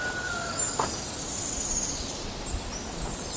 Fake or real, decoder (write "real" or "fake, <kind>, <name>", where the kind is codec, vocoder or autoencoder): real